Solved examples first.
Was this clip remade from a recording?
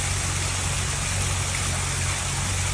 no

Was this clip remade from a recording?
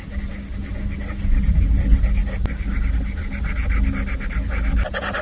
no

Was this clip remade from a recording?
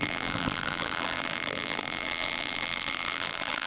yes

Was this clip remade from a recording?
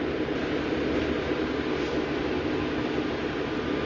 no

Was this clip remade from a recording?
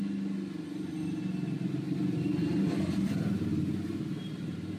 no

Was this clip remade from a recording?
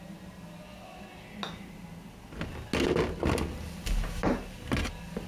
no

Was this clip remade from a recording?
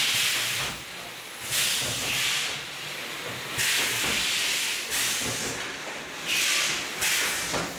no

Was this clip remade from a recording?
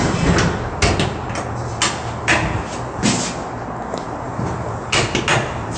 no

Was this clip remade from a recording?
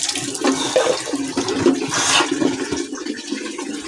no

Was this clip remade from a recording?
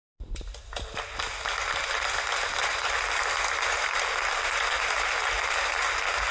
no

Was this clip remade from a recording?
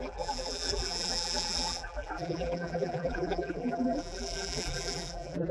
yes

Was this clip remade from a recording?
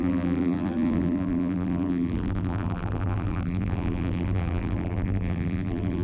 yes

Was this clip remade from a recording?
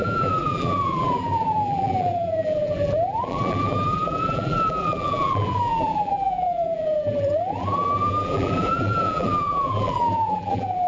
yes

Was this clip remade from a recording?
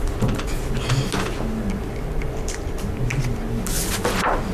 no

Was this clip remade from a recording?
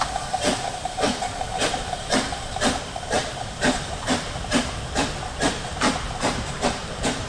yes